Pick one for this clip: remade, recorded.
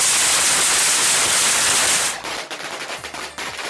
recorded